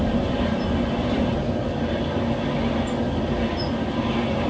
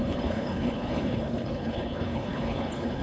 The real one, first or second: first